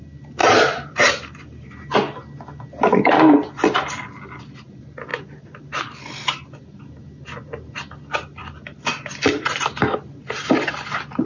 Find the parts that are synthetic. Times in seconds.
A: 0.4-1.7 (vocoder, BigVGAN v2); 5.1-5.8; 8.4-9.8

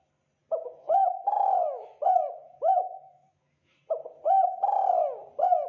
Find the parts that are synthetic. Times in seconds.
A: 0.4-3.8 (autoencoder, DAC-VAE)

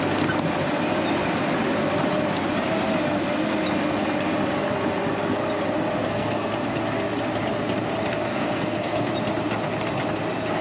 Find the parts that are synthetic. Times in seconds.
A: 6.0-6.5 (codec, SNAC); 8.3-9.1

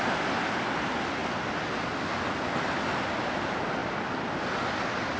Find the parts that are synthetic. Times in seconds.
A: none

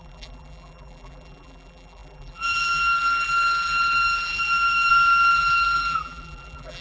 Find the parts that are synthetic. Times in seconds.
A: 0.0-6.8 (vocoder, BigVGAN v2)

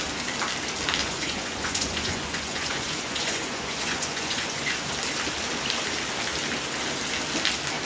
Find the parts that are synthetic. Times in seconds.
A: 1.0-4.9 (vocoder, Vocos)